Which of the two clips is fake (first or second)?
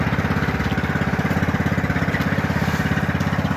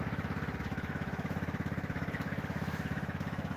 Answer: second